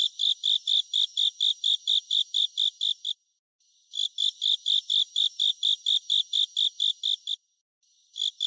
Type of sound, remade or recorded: recorded